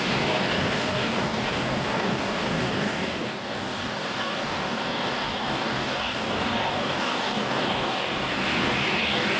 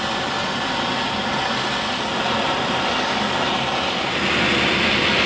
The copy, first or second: first